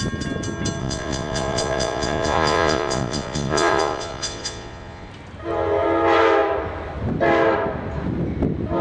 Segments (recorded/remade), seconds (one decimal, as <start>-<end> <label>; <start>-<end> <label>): 0.0-0.8 recorded; 0.8-5.1 remade; 5.1-8.8 recorded

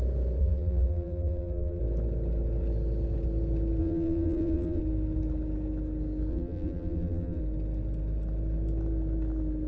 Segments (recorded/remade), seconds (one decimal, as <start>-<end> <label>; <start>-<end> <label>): 0.0-0.4 recorded; 0.4-1.8 remade; 1.8-3.8 recorded; 3.8-4.8 remade; 4.8-6.3 recorded; 6.3-7.4 remade; 7.4-9.7 recorded

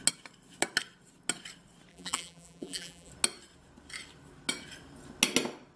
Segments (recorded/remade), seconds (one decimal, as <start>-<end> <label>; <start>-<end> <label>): 0.0-1.9 recorded; 1.9-3.1 remade; 3.1-5.8 recorded